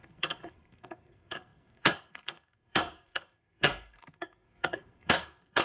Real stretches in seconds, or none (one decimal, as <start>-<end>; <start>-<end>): none